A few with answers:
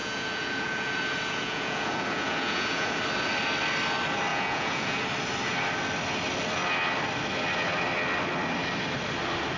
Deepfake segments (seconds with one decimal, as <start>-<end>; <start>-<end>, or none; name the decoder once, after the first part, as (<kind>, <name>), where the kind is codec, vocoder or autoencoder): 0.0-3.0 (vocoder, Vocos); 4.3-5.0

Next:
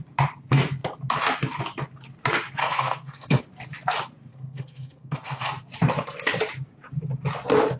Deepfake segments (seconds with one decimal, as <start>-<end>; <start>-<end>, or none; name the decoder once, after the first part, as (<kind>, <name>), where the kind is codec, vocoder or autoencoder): 2.6-3.4 (codec, SNAC); 4.3-5.5

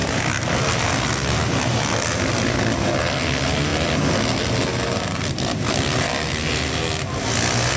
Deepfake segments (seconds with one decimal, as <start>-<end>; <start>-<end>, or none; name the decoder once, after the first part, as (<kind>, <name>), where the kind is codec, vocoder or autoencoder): none

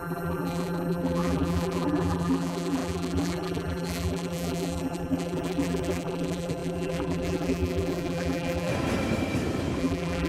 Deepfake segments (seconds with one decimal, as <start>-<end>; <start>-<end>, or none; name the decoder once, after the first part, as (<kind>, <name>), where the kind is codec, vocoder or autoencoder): 0.0-8.7 (vocoder, BigVGAN v2); 9.8-10.3

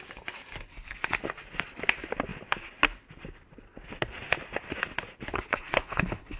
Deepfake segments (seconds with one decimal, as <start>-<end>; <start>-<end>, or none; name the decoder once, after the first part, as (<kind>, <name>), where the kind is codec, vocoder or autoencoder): 0.7-1.2 (codec, HILCodec); 5.3-6.4